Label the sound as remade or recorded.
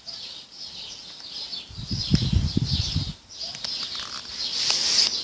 recorded